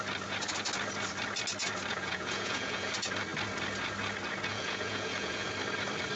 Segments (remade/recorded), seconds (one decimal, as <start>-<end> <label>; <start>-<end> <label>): 0.0-1.9 recorded; 1.9-2.9 remade; 2.9-4.5 recorded; 4.5-5.5 remade; 5.5-6.2 recorded